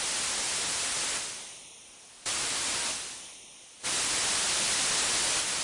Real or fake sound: real